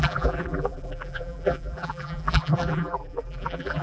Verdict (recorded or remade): remade